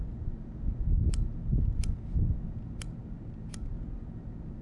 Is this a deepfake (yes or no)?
no